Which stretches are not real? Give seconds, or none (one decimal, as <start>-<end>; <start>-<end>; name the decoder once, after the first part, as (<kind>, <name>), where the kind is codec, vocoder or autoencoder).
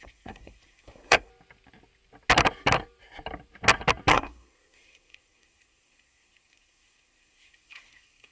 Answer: 0.0-1.3 (codec, SNAC); 4.1-8.3